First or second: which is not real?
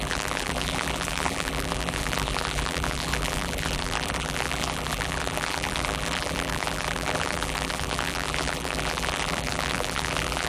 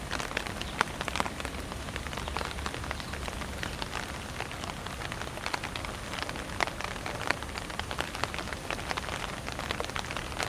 first